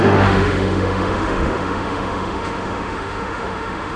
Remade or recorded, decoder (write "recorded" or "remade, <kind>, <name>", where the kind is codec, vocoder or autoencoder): remade, autoencoder, DAC-VAE